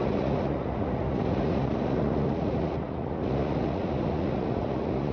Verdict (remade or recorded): remade